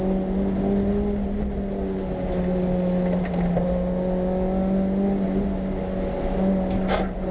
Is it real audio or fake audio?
real